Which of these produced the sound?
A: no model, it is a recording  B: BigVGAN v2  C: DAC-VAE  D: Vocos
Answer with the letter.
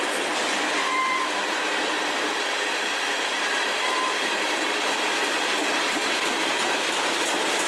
B